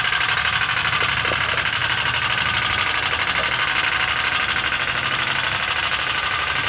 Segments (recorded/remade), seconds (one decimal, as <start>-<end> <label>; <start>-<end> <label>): 0.0-6.7 recorded